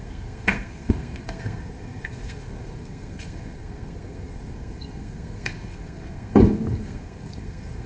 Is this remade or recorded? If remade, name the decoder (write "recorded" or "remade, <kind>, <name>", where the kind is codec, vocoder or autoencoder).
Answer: remade, codec, SNAC